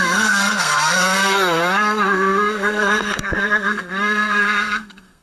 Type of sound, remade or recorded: remade